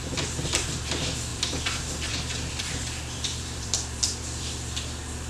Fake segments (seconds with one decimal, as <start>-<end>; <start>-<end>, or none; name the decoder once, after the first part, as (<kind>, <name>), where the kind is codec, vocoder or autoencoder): 1.3-4.5 (vocoder, BigVGAN v2)